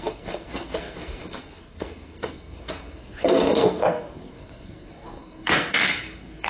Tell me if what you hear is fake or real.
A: fake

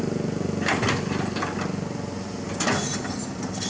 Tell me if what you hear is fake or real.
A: real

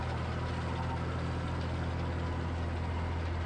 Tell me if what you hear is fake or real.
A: real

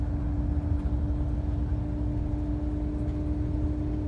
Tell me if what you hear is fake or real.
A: real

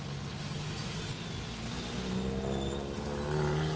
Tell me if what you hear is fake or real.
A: real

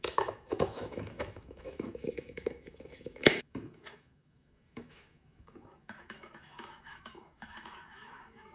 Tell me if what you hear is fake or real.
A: fake